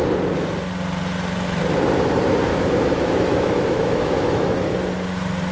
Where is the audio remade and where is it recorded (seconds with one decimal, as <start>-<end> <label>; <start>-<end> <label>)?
0.0-2.5 recorded; 2.5-4.7 remade; 4.7-5.5 recorded